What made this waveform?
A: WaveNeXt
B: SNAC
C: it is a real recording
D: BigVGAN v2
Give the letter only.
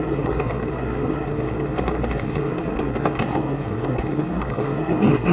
B